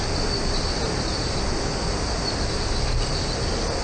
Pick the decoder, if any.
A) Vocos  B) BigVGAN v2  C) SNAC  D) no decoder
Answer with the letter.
D